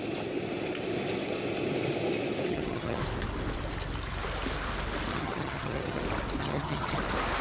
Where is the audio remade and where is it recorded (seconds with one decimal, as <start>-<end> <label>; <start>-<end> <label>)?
0.0-2.5 recorded; 2.5-3.0 remade; 3.0-5.1 recorded; 5.1-6.0 remade; 6.0-6.4 recorded; 6.4-7.0 remade; 7.0-7.4 recorded

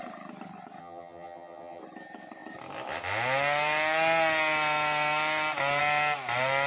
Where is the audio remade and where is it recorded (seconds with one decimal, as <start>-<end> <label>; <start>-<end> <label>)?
0.0-0.8 recorded; 0.8-1.8 remade; 1.8-6.7 recorded

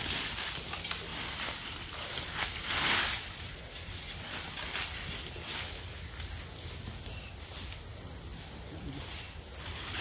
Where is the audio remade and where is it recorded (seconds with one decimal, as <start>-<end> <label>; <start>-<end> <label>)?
0.0-10.0 recorded

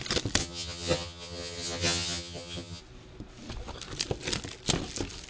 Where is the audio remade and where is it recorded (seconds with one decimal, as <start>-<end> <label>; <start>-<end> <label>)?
0.0-0.4 recorded; 0.4-2.8 remade; 2.8-5.3 recorded